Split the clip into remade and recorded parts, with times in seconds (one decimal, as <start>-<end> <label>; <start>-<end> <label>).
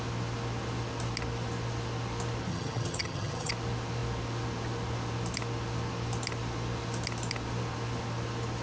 0.0-2.5 recorded; 2.5-3.5 remade; 3.5-8.6 recorded